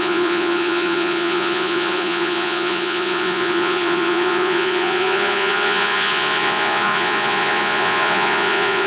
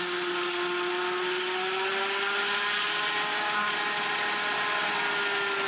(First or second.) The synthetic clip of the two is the first